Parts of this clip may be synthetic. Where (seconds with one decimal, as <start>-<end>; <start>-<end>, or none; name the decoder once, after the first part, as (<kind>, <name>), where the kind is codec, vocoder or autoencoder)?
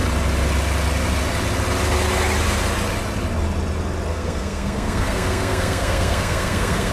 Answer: 4.1-6.9 (codec, SNAC)